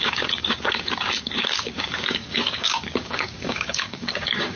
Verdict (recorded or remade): remade